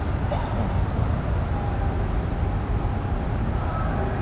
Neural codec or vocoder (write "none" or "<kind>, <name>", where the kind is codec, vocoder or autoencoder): none